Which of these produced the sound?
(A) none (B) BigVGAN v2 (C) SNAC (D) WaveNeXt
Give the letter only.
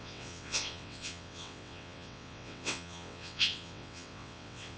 D